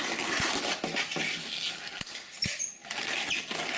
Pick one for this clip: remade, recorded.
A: recorded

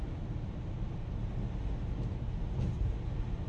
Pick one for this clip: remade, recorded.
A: recorded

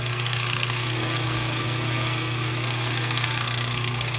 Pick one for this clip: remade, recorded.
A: remade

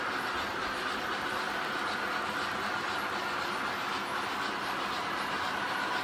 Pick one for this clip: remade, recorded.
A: recorded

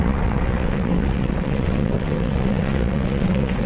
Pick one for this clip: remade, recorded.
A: remade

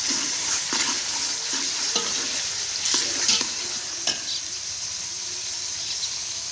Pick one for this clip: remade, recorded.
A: recorded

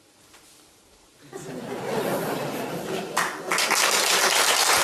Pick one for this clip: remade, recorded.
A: recorded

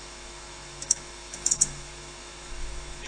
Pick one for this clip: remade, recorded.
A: remade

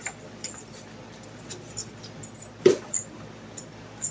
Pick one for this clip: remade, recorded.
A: recorded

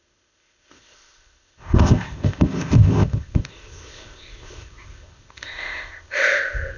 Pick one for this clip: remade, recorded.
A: remade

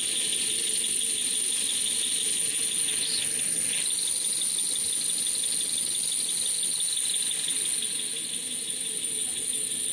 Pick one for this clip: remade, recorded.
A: recorded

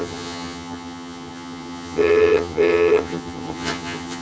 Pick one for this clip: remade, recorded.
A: remade